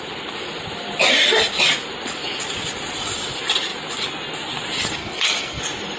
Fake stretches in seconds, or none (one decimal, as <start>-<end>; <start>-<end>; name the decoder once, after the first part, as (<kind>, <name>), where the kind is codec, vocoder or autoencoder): 5.0-5.6 (codec, SNAC)